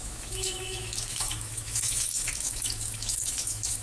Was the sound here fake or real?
fake